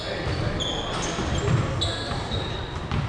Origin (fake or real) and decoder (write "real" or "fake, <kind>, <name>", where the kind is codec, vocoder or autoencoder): real